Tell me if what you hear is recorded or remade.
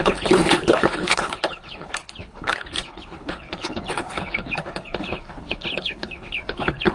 remade